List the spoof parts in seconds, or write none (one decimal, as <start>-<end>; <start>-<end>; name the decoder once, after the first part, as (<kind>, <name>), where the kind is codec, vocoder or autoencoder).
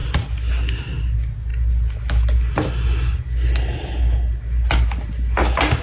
none